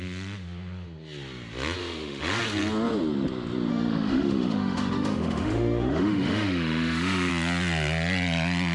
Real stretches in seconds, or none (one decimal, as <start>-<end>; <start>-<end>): 0.0-1.8; 2.4-3.7; 7.3-8.7